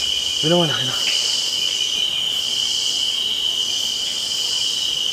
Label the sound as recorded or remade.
recorded